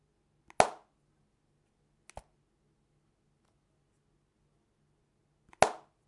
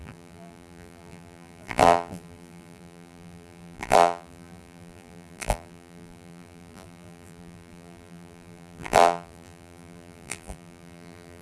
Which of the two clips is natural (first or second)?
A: first